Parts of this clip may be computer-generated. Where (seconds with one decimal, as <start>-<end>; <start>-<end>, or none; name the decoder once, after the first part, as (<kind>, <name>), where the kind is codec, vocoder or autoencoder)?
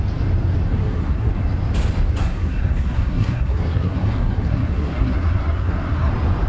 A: 0.7-1.3 (codec, SNAC); 2.2-6.1